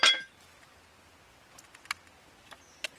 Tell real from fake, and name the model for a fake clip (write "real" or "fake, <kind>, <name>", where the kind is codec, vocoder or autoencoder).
real